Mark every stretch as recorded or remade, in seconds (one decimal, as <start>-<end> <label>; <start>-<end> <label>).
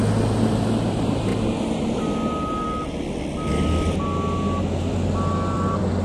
0.0-1.3 remade; 1.3-4.9 recorded; 4.9-6.0 remade